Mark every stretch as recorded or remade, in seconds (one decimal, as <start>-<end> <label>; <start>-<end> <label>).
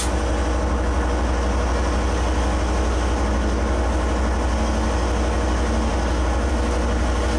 0.0-7.4 recorded